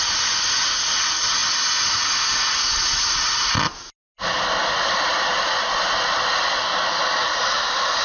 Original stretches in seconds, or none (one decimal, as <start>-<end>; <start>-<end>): 0.0-8.0